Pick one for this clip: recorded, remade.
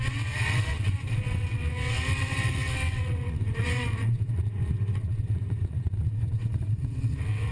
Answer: remade